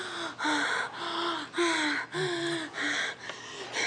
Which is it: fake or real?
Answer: real